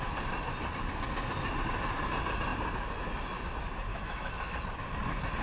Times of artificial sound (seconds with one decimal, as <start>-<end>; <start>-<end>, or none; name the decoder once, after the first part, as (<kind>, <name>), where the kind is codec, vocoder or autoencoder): 3.9-4.6 (autoencoder, DAC-VAE)